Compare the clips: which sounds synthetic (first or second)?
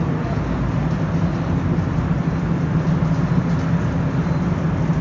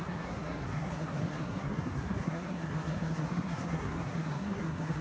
second